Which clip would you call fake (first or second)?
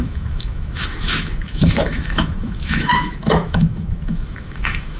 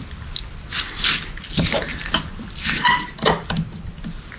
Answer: first